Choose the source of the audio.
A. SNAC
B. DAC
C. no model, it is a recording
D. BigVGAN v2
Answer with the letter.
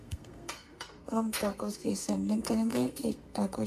A